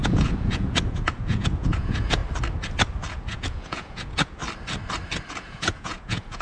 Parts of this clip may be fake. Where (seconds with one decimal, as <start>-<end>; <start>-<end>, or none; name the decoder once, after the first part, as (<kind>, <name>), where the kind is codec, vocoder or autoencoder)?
0.0-2.2 (vocoder, Vocos); 3.1-4.4; 5.3-6.4